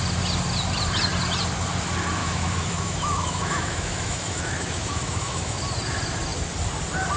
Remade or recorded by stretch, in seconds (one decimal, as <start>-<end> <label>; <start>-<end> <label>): 0.0-2.2 recorded; 2.2-5.6 remade; 5.6-7.2 recorded